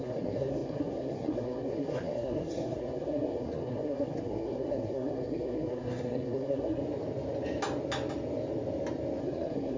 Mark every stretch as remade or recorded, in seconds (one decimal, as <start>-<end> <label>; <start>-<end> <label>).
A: 0.0-6.8 remade; 6.8-9.2 recorded; 9.2-9.8 remade